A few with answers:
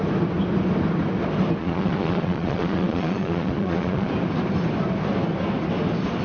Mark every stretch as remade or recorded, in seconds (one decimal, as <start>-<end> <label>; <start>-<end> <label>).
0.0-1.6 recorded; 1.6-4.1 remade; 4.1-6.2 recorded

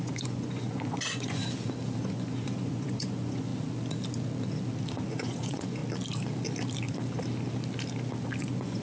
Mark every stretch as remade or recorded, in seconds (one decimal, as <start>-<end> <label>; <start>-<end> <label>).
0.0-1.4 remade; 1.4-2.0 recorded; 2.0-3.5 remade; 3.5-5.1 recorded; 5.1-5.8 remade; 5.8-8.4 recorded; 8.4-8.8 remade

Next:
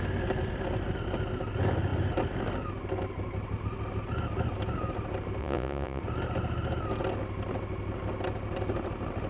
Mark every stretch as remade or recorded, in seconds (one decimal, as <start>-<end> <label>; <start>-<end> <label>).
0.0-5.4 recorded; 5.4-6.0 remade; 6.0-9.3 recorded